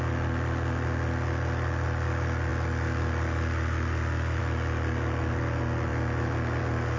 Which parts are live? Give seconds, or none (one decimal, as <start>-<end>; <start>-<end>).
0.0-7.0